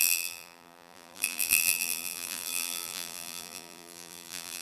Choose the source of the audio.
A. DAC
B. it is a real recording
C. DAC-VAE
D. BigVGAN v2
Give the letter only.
D